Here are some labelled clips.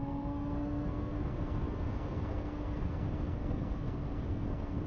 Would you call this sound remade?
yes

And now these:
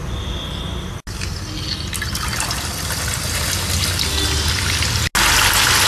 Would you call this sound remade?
no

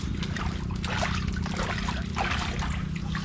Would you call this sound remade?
no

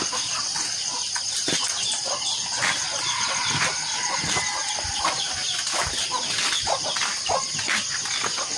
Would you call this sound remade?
no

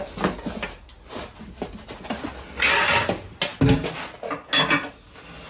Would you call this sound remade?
no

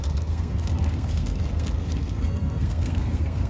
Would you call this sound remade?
yes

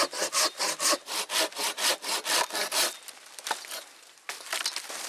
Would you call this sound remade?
no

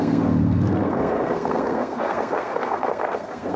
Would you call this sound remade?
yes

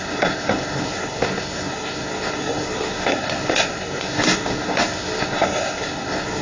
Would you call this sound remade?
yes